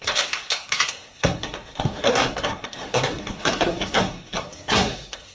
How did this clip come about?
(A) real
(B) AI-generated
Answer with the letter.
B